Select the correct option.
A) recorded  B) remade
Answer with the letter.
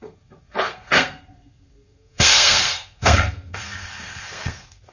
B